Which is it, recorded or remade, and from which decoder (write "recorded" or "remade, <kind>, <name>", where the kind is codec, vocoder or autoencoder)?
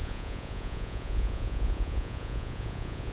remade, vocoder, Vocos